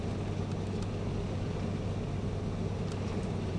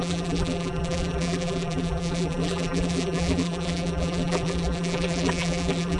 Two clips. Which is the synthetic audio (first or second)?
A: second